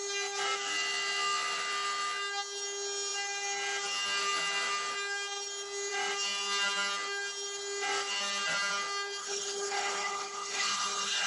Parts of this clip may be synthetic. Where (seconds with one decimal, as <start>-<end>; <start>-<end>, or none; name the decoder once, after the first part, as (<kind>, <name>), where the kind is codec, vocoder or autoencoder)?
9.2-11.3 (codec, HILCodec)